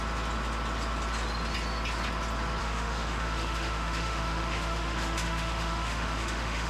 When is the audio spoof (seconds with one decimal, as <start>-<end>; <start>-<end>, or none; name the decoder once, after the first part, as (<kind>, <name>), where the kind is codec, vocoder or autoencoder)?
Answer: 2.6-6.7 (autoencoder, DAC-VAE)